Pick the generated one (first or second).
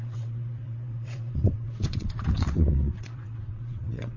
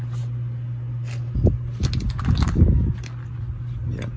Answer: first